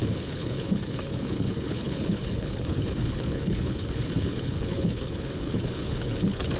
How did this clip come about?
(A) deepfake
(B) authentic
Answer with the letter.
A